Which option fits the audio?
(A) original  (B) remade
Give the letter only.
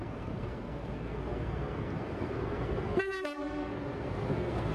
B